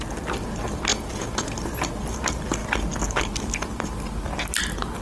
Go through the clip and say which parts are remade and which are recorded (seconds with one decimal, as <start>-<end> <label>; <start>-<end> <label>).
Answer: 0.0-0.9 recorded; 0.9-1.5 remade; 1.5-5.0 recorded